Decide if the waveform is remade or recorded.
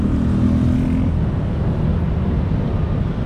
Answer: recorded